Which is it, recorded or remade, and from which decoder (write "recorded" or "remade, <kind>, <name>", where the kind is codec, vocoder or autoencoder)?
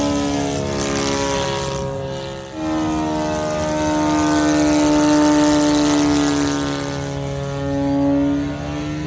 recorded